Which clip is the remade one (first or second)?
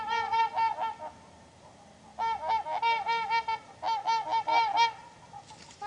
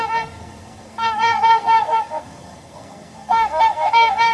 second